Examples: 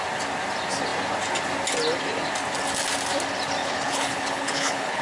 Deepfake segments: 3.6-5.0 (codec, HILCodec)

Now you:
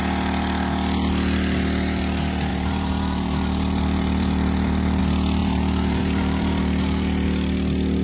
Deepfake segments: 2.5-5.0 (vocoder, BigVGAN v2); 5.4-6.6

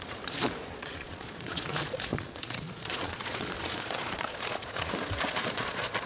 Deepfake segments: 0.0-6.1 (vocoder, Vocos)

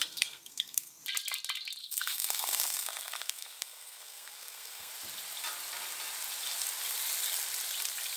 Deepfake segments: 0.0-1.0 (codec, SNAC); 1.8-4.9